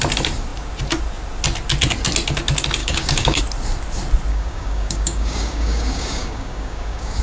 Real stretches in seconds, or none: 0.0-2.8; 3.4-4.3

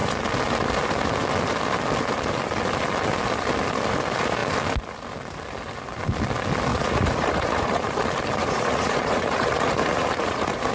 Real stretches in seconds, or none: 0.0-6.7; 8.0-8.4

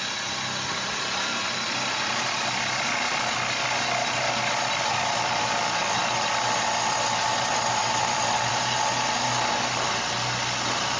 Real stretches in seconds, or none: 0.0-7.8; 8.5-11.0